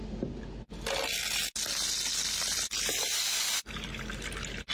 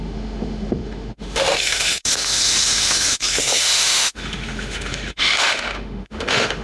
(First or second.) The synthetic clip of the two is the second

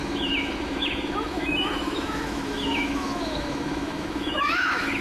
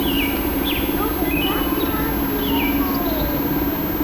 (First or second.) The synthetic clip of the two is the first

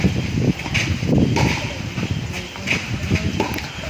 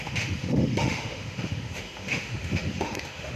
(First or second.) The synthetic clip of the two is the second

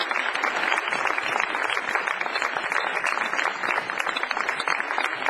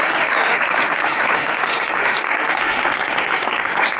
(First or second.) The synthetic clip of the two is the second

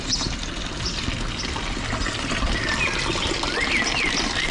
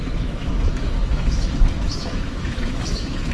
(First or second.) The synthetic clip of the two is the second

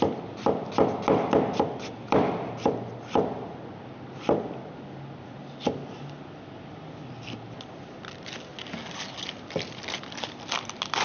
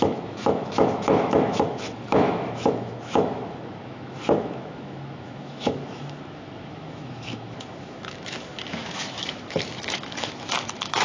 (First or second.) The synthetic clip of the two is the second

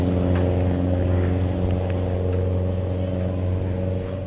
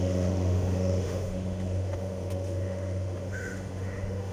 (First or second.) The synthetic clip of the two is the second